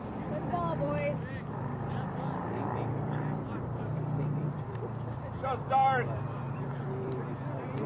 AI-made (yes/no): yes